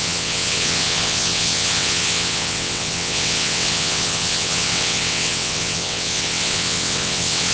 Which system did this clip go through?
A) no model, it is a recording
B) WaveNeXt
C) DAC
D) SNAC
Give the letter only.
B